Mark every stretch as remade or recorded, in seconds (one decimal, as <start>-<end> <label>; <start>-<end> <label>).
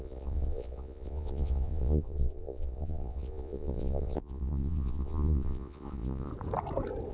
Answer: 0.0-6.3 remade; 6.3-7.1 recorded